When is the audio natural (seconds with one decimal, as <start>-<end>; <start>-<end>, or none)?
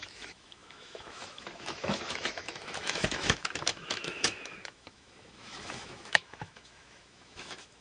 none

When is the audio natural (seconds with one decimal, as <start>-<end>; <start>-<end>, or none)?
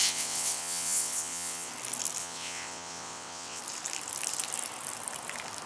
1.7-2.2; 3.6-5.7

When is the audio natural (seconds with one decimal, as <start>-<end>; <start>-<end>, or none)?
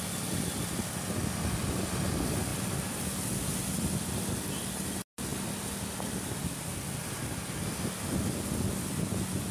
0.0-9.5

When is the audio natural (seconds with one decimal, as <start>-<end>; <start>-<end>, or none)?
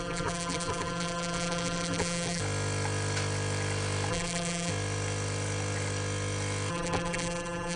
2.4-4.1; 4.7-6.7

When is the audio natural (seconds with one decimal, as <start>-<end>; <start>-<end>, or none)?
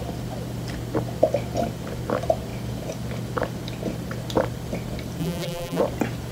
0.0-5.2; 5.8-6.3